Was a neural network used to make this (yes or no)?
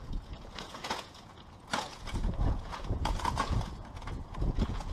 yes